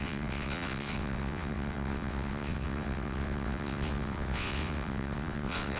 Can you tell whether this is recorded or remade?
remade